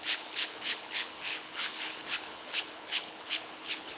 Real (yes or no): no